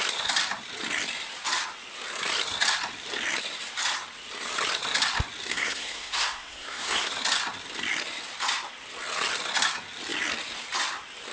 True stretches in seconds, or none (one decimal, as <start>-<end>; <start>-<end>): 0.0-5.5; 7.1-11.3

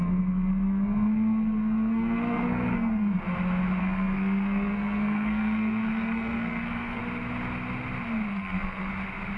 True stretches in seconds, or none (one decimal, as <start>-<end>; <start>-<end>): 3.2-3.8; 7.0-8.3; 8.9-9.4

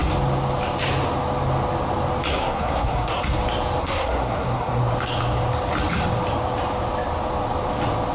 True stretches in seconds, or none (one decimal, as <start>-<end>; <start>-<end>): 0.0-2.3; 3.2-3.8; 4.8-8.1

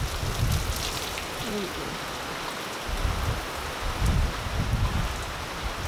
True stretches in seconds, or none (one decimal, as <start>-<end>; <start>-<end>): 0.0-5.9

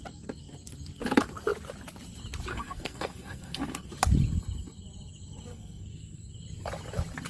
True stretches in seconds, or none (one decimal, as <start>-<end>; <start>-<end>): 0.0-2.5; 3.9-5.5; 6.3-7.3